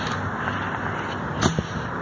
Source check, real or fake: real